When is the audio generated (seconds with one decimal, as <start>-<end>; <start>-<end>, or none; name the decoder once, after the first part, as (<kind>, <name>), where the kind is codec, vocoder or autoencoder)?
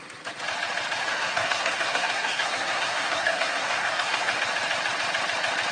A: 1.0-4.4 (codec, SNAC)